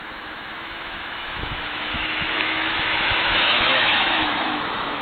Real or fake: fake